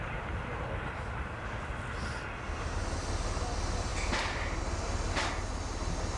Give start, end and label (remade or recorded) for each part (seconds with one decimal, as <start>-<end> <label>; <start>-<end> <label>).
0.0-6.2 recorded

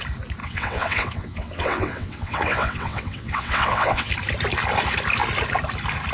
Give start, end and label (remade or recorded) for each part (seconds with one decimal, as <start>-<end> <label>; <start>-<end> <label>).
0.0-0.4 recorded; 0.4-4.1 remade; 4.1-6.1 recorded

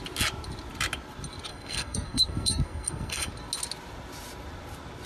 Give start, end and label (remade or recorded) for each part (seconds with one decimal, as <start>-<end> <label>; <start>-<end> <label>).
0.0-1.5 recorded; 1.5-3.3 remade; 3.3-5.1 recorded

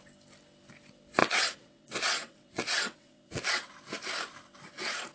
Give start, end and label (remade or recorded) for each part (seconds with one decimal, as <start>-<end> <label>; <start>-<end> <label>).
0.0-1.2 recorded; 1.2-3.7 remade; 3.7-5.1 recorded